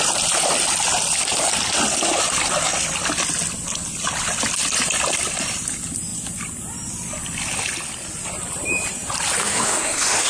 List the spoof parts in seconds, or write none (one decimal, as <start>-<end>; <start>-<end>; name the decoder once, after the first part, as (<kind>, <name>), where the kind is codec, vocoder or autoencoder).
9.4-10.3 (autoencoder, DAC-VAE)